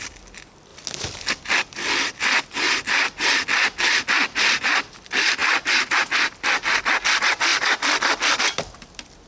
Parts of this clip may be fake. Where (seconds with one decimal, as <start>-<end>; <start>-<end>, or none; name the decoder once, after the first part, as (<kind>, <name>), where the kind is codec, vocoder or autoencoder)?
none